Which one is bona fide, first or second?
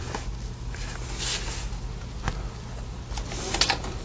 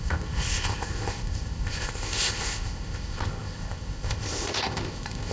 first